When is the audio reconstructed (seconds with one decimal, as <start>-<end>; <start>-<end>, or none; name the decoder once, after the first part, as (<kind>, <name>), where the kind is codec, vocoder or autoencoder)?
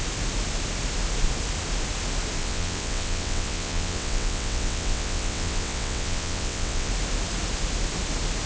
2.4-6.9 (vocoder, WaveNeXt)